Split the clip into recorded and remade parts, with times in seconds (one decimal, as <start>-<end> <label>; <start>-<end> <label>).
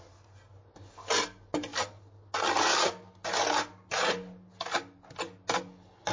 0.0-6.1 recorded